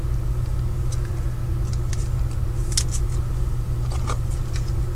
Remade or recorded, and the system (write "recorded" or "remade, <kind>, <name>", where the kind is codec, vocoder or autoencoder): recorded